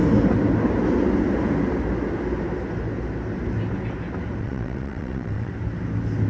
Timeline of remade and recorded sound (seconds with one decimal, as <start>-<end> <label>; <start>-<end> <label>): 0.0-4.4 recorded; 4.4-5.5 remade; 5.5-6.3 recorded